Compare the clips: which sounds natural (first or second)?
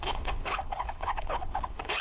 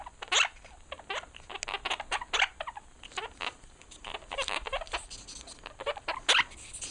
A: second